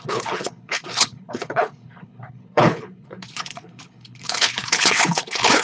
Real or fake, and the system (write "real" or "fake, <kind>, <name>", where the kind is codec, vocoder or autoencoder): fake, codec, HILCodec